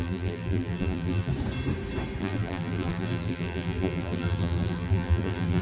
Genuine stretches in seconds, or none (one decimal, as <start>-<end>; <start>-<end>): 1.3-2.2